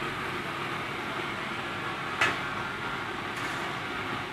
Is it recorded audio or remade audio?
recorded